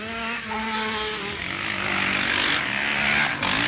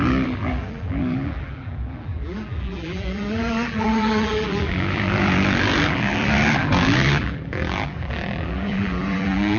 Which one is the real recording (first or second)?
first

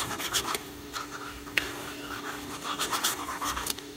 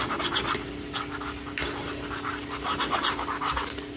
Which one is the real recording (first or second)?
second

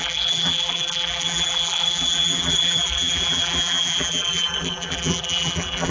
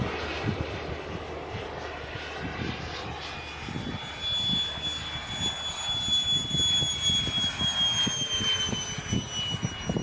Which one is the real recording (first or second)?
second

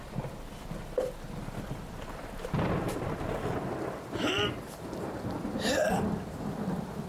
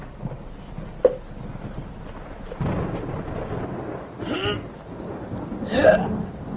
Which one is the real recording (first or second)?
second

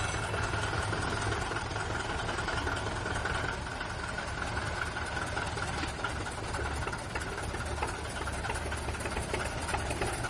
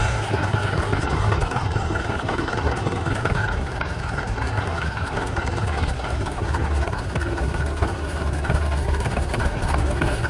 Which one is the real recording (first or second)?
first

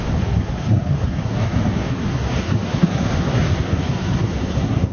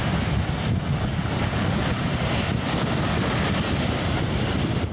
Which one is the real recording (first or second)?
second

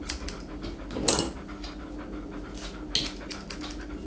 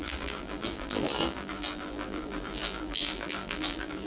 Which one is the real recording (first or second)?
first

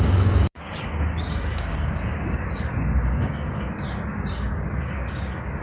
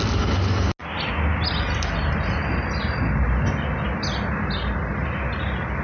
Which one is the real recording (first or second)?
second